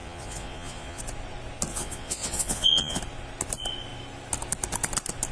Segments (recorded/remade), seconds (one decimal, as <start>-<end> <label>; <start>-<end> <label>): 0.0-1.0 remade; 1.0-1.7 recorded; 1.7-3.0 remade; 3.0-5.3 recorded

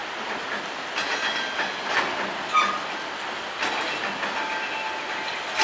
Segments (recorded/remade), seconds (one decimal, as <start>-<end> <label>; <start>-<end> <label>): 0.0-5.6 recorded

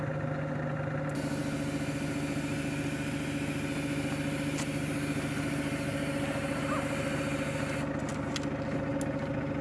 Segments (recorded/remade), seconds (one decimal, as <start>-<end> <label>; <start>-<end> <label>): 0.0-9.6 recorded

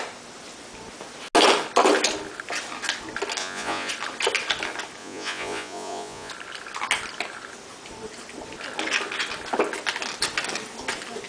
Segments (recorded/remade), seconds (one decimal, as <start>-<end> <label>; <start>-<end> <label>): 0.0-3.4 recorded; 3.4-3.9 remade; 3.9-5.0 recorded; 5.0-6.3 remade; 6.3-11.3 recorded